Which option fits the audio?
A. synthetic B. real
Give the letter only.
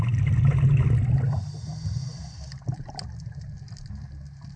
B